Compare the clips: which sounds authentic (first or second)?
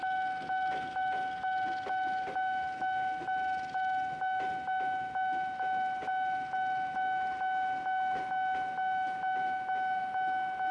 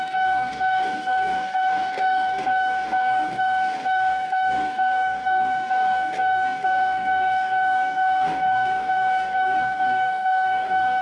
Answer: first